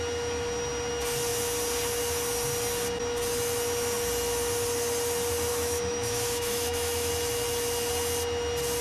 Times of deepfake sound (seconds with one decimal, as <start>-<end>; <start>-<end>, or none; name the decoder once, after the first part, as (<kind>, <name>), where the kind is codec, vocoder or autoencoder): 5.5-7.1 (autoencoder, DAC-VAE)